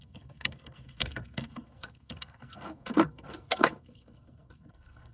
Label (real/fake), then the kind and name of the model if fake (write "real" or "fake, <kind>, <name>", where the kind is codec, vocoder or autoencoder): fake, codec, SNAC